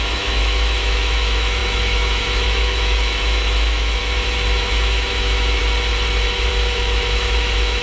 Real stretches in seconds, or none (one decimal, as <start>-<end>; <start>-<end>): 5.6-6.5